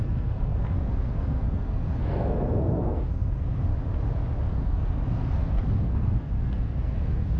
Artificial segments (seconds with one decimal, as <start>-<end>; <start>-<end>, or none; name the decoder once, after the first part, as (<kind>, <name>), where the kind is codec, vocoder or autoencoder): 0.0-3.7 (codec, SNAC); 4.5-7.4